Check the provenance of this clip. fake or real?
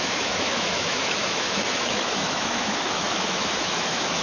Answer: fake